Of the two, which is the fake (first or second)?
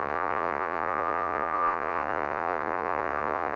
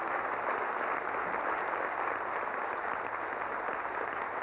first